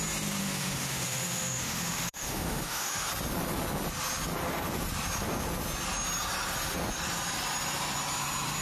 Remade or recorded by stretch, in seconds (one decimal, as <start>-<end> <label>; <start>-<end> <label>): 0.0-0.4 recorded; 0.4-3.1 remade; 3.1-8.6 recorded